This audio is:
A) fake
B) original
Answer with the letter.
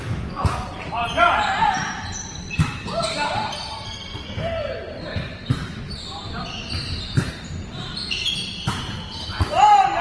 A